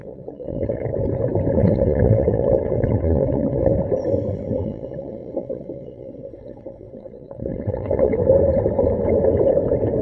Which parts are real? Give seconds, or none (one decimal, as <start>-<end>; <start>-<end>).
0.9-1.5; 3.7-4.3; 8.1-10.0